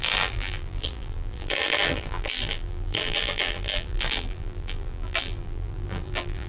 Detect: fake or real fake